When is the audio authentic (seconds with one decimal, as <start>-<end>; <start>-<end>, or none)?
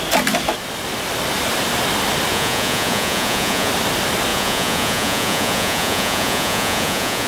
0.0-2.3; 3.7-4.3